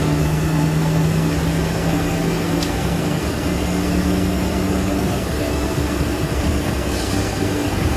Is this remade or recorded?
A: remade